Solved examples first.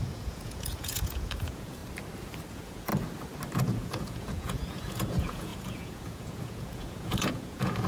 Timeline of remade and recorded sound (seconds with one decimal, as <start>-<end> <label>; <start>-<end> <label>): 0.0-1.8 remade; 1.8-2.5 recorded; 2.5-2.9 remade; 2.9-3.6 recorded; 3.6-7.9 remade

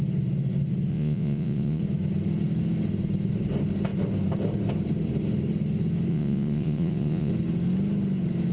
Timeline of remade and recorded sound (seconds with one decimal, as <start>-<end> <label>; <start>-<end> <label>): 0.0-0.9 recorded; 0.9-1.8 remade; 1.8-6.1 recorded; 6.1-7.3 remade; 7.3-8.5 recorded

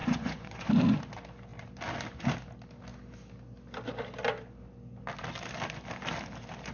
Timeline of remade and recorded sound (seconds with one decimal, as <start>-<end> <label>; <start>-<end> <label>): 0.0-0.7 remade; 0.7-6.7 recorded

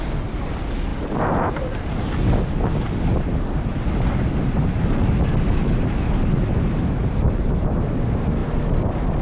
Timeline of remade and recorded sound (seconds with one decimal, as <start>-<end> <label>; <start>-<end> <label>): 0.0-9.2 recorded